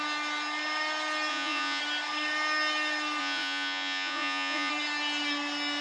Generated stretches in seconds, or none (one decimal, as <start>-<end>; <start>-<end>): 1.3-1.8; 3.2-4.7